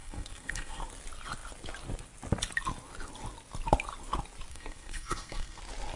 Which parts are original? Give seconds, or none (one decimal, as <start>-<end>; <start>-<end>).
0.8-4.5; 5.6-6.0